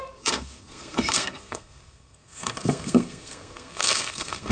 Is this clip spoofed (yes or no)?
yes